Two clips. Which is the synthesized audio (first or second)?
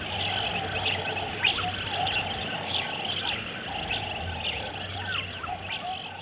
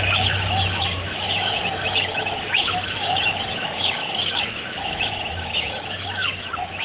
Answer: second